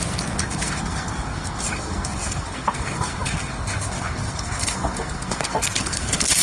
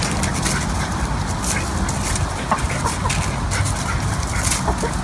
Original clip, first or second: second